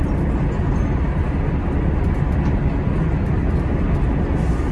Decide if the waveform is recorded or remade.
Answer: recorded